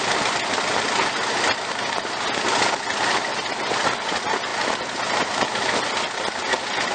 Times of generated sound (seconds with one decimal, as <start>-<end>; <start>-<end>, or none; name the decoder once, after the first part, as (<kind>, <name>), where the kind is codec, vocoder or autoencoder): none